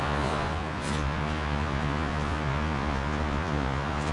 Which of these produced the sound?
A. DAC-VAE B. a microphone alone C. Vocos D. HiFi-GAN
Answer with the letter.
C